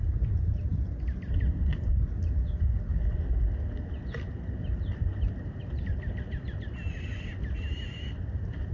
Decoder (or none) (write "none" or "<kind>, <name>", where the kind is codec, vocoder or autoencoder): none